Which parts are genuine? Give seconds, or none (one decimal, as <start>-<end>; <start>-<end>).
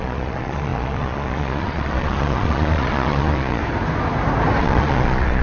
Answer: 3.6-4.6